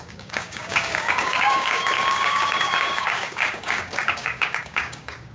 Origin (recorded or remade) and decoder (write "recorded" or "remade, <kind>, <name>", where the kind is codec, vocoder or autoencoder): remade, codec, DAC